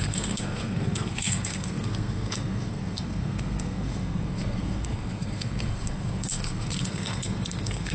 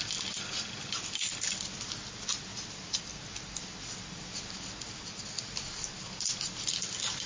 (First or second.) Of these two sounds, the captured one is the second